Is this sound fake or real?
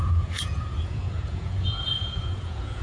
fake